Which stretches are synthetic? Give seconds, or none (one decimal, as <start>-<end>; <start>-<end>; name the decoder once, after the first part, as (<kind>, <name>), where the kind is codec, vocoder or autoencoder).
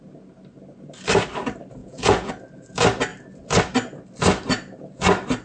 1.8-2.3 (vocoder, Vocos)